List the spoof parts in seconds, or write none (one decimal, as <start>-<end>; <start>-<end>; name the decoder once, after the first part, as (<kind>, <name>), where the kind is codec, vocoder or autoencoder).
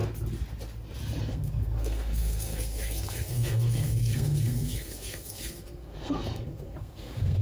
1.2-7.4 (codec, SNAC)